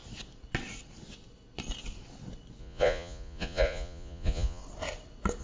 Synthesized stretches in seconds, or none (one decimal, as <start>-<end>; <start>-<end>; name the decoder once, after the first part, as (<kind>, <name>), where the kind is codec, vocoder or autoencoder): 2.6-4.6 (vocoder, Vocos)